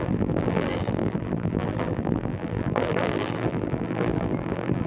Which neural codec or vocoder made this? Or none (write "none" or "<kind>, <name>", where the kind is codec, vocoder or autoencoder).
vocoder, BigVGAN v2